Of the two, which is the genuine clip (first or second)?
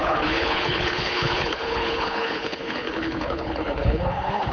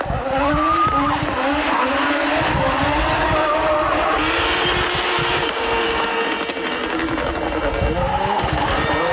second